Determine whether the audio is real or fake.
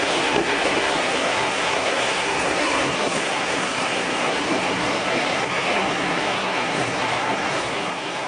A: fake